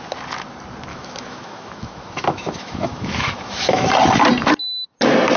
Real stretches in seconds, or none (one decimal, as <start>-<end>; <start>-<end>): 0.0-0.9; 3.9-5.4